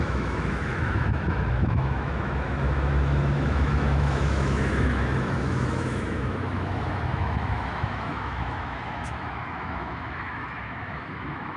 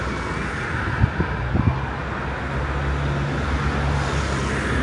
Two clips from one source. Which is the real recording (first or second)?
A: second